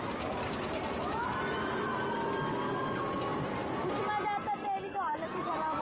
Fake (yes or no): no